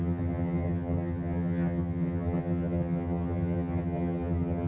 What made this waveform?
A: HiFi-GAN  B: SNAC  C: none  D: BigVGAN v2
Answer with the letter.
A